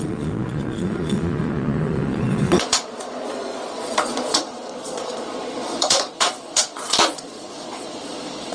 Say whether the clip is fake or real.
fake